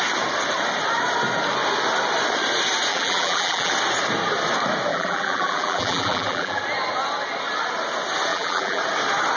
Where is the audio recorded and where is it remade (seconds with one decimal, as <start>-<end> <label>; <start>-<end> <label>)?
0.0-2.9 recorded; 2.9-3.7 remade; 3.7-4.9 recorded; 4.9-6.6 remade; 6.6-8.3 recorded; 8.3-8.8 remade; 8.8-9.4 recorded